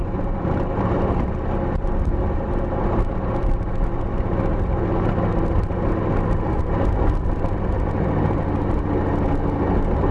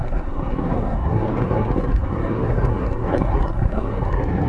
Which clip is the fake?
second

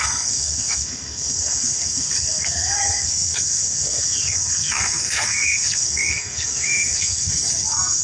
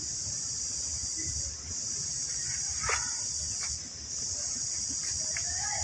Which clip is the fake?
first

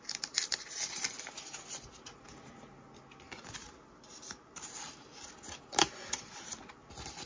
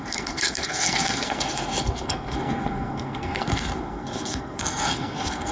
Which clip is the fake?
second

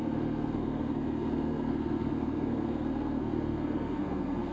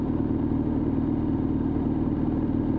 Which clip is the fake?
first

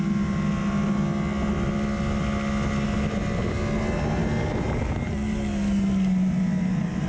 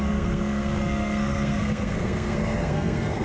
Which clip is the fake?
second